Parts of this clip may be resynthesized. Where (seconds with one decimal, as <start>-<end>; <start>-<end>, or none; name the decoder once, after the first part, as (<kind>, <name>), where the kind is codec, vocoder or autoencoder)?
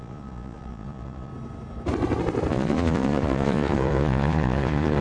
0.0-1.3 (vocoder, Vocos); 2.5-5.0